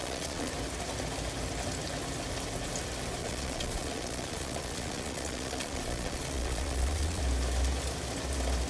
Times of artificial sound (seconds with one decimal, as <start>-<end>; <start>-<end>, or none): 0.0-0.5; 3.2-7.2